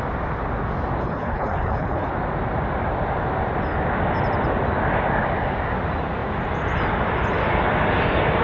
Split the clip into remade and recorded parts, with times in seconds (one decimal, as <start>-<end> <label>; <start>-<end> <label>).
0.0-1.0 recorded; 1.0-2.1 remade; 2.1-8.4 recorded

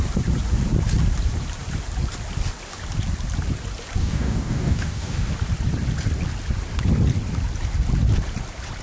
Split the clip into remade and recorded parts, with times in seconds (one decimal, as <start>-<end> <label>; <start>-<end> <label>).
0.0-4.0 recorded; 4.0-5.3 remade; 5.3-8.8 recorded

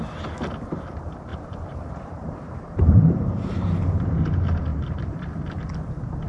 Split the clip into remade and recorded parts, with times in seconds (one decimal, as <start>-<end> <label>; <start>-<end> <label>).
0.0-1.3 recorded; 1.3-4.2 remade; 4.2-4.7 recorded; 4.7-5.3 remade; 5.3-6.3 recorded

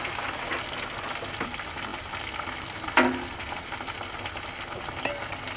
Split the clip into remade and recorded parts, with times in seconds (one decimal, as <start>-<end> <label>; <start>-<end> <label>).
0.0-5.6 recorded

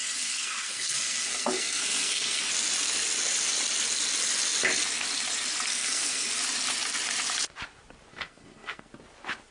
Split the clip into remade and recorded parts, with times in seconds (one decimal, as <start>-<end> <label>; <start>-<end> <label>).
0.0-2.4 remade; 2.4-5.7 recorded; 5.7-6.3 remade; 6.3-8.1 recorded; 8.1-8.9 remade; 8.9-9.5 recorded

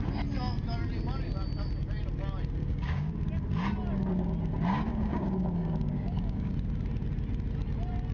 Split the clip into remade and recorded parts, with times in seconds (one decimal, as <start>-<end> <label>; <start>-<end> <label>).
0.0-2.6 recorded; 2.6-3.1 remade; 3.1-4.9 recorded; 4.9-6.5 remade; 6.5-8.1 recorded